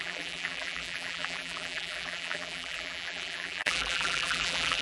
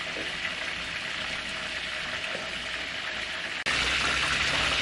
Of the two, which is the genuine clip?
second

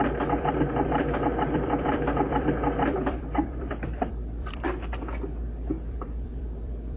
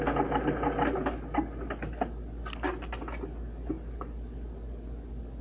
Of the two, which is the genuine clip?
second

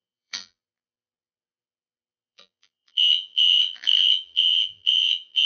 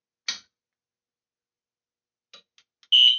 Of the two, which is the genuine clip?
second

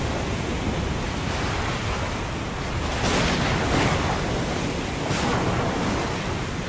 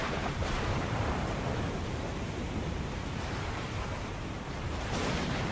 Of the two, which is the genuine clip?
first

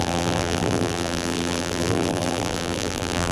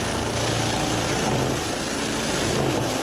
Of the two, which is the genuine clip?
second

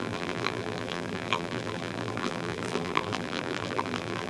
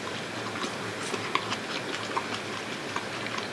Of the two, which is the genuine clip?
second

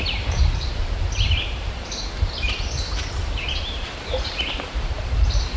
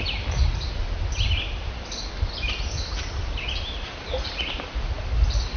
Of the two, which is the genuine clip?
second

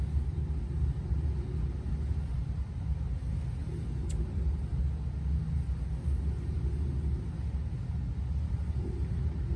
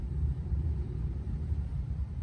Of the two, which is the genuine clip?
first